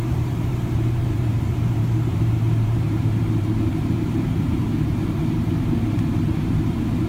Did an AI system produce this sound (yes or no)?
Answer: yes